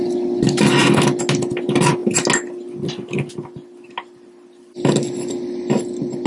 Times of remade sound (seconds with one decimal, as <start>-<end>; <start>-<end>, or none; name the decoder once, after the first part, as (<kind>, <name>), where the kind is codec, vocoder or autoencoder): none

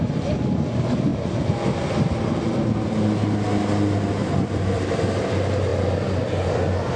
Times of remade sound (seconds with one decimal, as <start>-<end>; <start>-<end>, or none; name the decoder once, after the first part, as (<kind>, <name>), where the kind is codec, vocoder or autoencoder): 4.2-5.2 (vocoder, BigVGAN v2)

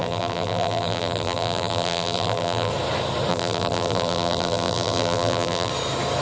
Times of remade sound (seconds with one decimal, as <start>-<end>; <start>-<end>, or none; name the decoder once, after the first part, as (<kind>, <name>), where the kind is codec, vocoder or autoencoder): 0.0-2.7 (vocoder, BigVGAN v2); 3.3-5.7

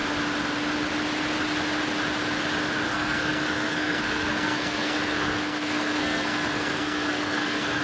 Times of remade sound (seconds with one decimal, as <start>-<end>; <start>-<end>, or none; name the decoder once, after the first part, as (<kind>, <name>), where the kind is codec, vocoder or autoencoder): 2.9-7.8 (codec, SNAC)